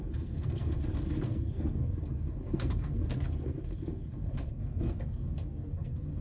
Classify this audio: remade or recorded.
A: remade